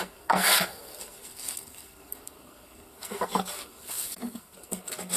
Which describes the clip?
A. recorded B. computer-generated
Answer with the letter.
B